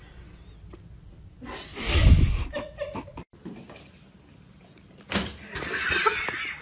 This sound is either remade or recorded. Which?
recorded